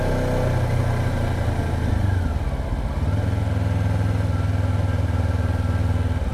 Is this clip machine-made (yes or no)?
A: no